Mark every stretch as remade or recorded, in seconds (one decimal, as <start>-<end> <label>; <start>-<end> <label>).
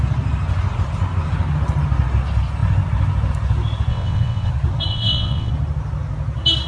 0.0-3.9 recorded; 3.9-4.5 remade; 4.5-4.9 recorded; 4.9-5.5 remade; 5.5-6.7 recorded